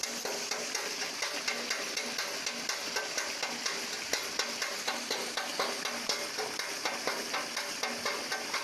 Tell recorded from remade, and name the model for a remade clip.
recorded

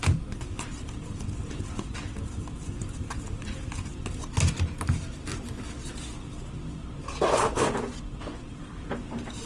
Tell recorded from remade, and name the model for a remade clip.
recorded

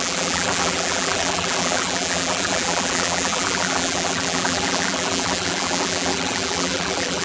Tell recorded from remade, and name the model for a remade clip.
remade, vocoder, BigVGAN v2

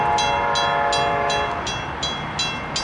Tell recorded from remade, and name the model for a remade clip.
recorded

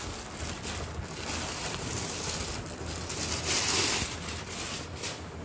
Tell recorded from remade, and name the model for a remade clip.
recorded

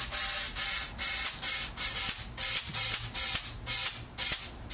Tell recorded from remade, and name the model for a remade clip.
recorded